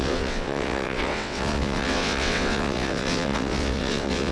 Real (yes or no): no